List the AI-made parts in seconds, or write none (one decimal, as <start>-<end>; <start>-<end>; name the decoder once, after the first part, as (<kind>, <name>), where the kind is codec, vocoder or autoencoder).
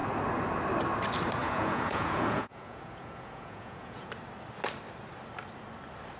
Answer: 1.4-4.1 (vocoder, Vocos)